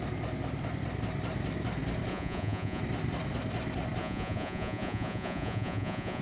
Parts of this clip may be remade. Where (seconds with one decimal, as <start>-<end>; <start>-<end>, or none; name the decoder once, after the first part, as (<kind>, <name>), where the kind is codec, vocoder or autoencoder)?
2.1-2.8 (vocoder, Vocos); 4.0-6.2

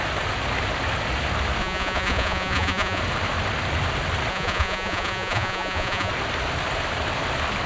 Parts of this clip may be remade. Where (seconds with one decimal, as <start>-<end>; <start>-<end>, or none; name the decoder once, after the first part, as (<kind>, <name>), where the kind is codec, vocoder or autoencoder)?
1.6-3.0 (vocoder, Vocos); 4.3-6.1

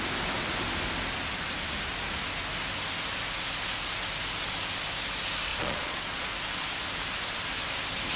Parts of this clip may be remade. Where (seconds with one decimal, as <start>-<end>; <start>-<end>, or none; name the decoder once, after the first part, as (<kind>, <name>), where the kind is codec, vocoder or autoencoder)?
5.5-6.3 (vocoder, Vocos)

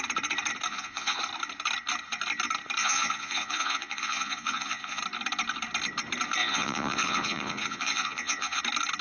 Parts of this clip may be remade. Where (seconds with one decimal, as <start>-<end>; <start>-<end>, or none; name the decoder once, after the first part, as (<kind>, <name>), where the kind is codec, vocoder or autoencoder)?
0.7-1.2 (vocoder, Vocos); 2.8-5.0; 6.4-8.6

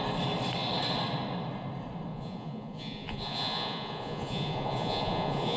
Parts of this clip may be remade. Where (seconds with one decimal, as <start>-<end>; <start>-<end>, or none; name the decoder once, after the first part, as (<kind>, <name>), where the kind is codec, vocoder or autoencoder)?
2.1-5.6 (vocoder, Vocos)